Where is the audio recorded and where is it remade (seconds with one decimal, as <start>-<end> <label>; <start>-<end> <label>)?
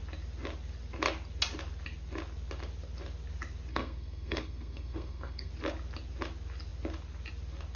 0.0-3.7 recorded; 3.7-5.5 remade; 5.5-7.8 recorded